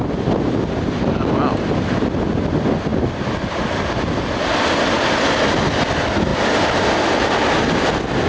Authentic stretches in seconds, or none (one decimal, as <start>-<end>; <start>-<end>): 0.0-8.3